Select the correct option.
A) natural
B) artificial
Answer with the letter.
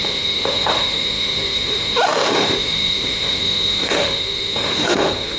B